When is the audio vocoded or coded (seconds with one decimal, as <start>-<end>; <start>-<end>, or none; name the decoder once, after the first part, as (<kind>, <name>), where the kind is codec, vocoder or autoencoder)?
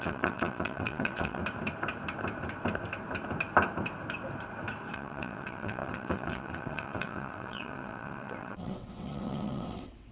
0.0-1.4 (vocoder, WaveNeXt); 4.9-10.1